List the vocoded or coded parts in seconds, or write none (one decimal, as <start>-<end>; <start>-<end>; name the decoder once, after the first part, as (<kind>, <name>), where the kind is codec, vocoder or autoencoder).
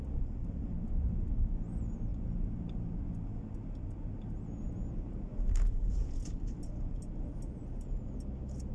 none